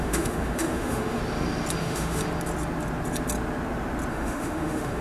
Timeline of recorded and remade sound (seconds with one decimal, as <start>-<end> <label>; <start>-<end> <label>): 0.0-1.2 remade; 1.2-1.8 recorded; 1.8-2.2 remade; 2.2-4.1 recorded; 4.1-5.0 remade